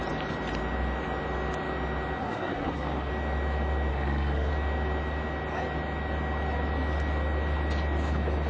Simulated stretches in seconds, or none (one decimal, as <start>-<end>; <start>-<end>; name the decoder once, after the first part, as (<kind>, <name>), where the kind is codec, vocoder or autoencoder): 2.2-3.1 (codec, SNAC); 3.9-4.5